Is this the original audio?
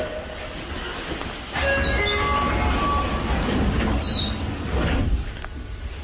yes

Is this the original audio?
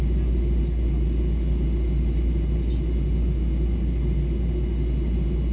yes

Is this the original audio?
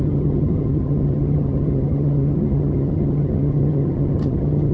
no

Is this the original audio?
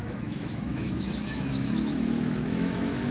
no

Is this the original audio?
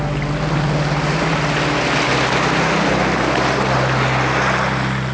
yes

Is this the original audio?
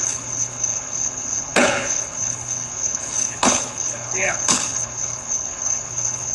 no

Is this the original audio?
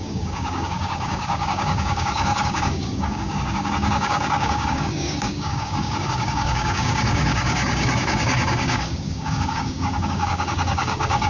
no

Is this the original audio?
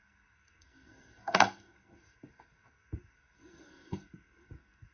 no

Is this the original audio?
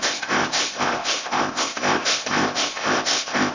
no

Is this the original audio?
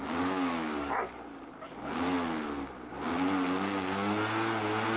yes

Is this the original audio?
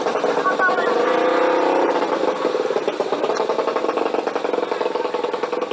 yes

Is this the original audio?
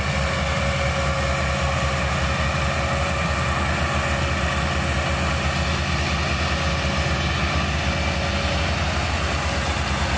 yes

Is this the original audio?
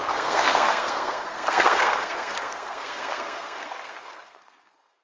no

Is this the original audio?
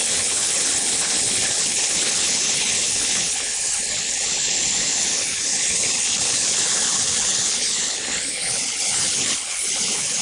no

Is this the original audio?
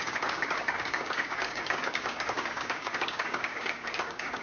no